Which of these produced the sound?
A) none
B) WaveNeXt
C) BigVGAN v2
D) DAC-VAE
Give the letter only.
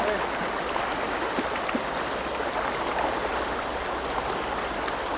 A